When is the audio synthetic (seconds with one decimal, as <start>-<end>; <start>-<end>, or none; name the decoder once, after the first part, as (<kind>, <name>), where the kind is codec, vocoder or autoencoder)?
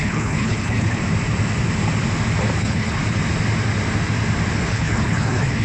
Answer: 0.0-1.0 (codec, HILCodec); 2.6-3.0; 4.6-5.6